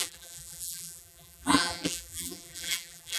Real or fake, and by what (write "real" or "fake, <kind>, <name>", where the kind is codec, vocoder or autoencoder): fake, vocoder, BigVGAN v2